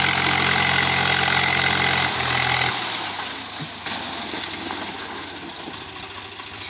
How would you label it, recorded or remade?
recorded